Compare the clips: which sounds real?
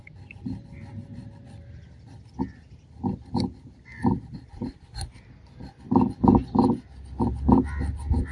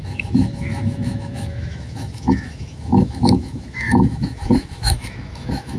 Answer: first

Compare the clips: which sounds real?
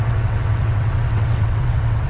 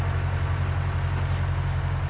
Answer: second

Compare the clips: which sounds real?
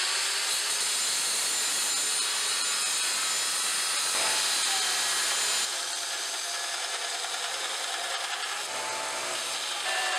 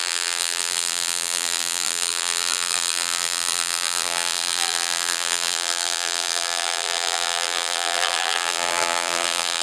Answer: first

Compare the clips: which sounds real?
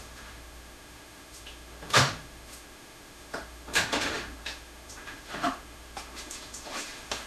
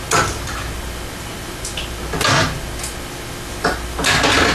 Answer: second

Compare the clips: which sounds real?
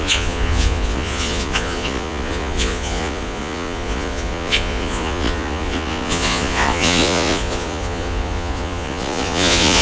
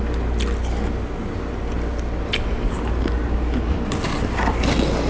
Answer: second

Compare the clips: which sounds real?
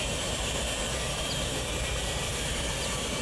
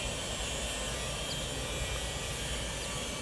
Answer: second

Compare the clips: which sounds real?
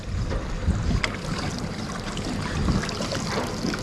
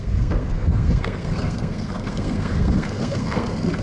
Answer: first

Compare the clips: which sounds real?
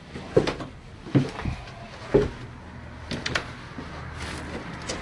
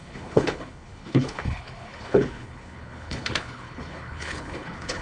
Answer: first